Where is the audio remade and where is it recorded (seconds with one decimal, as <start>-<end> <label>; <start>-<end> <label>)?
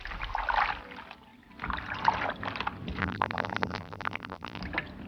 0.0-3.0 recorded; 3.0-4.6 remade; 4.6-5.1 recorded